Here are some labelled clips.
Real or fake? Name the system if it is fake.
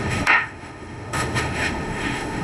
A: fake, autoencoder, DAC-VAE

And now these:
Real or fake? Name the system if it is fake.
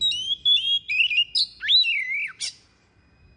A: real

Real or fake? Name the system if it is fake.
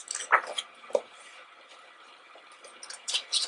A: real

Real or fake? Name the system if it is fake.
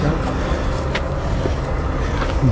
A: real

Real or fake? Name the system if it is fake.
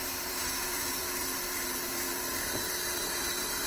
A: fake, vocoder, BigVGAN v2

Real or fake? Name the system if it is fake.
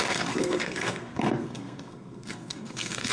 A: fake, codec, SNAC